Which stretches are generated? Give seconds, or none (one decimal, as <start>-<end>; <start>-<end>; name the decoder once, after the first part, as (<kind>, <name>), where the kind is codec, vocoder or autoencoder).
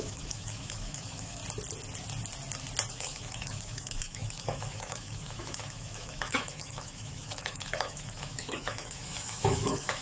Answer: 0.0-1.4 (autoencoder, DAC-VAE); 2.9-10.0